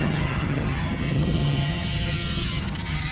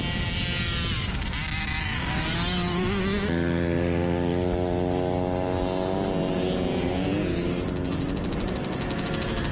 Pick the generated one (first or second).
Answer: first